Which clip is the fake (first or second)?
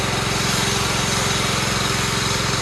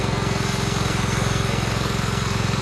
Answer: second